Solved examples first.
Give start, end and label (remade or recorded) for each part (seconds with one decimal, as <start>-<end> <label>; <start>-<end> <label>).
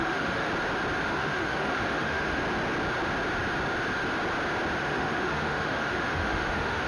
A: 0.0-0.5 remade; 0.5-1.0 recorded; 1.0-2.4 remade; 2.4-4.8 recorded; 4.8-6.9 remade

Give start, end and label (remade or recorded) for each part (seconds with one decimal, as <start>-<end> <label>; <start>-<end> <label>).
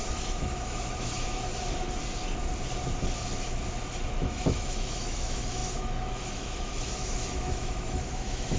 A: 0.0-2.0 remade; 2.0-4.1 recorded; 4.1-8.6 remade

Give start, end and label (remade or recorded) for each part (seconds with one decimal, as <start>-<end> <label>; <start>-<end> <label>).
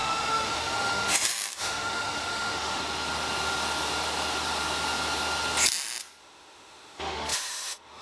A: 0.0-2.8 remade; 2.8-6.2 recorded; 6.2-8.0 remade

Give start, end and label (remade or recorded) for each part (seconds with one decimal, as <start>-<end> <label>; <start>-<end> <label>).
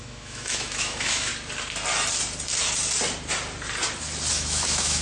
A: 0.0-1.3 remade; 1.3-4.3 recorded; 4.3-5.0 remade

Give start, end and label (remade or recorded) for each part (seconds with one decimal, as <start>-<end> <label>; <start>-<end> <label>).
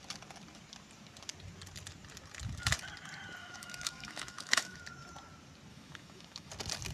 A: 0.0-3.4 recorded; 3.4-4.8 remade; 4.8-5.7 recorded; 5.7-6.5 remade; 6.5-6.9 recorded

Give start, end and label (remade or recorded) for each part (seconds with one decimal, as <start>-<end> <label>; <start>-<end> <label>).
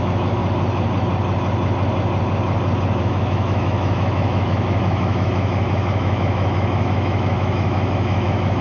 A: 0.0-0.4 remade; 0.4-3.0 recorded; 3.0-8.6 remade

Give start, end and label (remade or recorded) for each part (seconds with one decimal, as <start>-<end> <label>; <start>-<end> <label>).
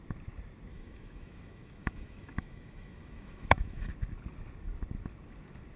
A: 0.0-0.7 recorded; 0.7-3.9 remade; 3.9-5.8 recorded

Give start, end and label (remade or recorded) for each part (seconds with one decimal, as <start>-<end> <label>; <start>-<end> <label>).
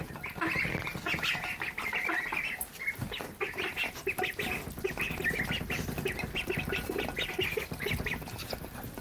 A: 0.0-9.0 recorded